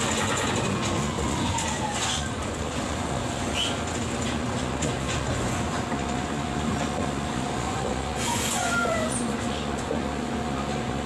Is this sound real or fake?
fake